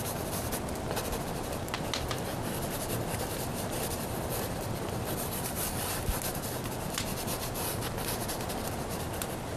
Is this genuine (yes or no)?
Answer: yes